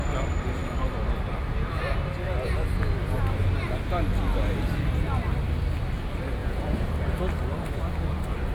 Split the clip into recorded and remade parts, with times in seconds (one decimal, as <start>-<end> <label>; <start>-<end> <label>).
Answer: 0.0-6.4 recorded; 6.4-6.9 remade; 6.9-8.5 recorded